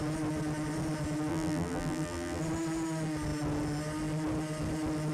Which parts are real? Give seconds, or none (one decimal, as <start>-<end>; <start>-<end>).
0.0-1.3; 2.4-5.1